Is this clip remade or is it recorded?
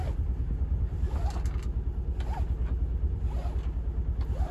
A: recorded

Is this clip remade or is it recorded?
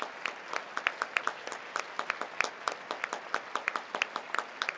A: recorded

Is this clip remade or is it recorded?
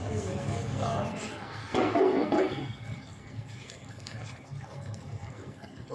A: remade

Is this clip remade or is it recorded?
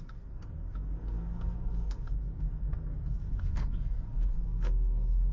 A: remade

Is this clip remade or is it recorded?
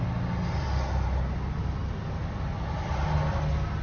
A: recorded